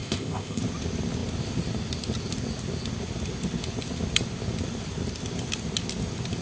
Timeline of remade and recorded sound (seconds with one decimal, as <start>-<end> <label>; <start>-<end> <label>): 0.0-0.6 remade; 0.6-6.4 recorded